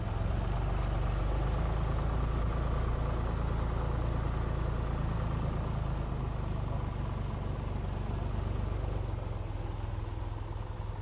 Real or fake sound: real